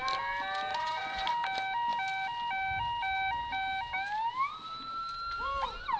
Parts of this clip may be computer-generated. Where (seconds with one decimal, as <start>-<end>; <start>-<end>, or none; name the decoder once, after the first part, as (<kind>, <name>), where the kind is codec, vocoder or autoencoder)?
0.7-1.3 (vocoder, Vocos)